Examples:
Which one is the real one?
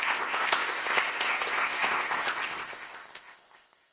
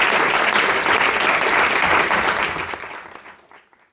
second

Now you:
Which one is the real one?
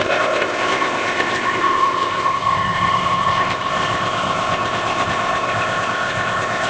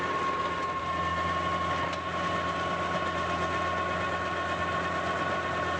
second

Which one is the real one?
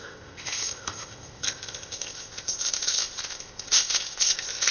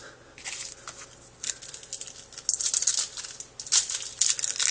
second